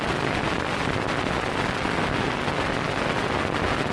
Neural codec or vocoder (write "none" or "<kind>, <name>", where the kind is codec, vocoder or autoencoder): none